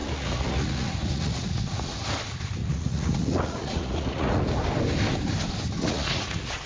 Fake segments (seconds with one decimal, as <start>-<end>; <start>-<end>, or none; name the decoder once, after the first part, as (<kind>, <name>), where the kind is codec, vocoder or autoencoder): 0.0-2.0 (vocoder, Vocos); 2.6-4.4; 5.8-6.7